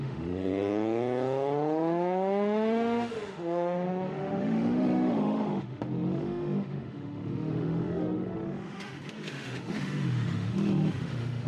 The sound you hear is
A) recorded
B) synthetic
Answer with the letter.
B